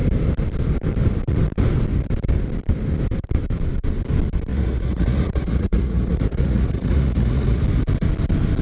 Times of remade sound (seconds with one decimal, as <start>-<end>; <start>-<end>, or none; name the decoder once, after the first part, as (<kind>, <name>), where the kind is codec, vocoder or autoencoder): 4.5-7.6 (vocoder, Vocos)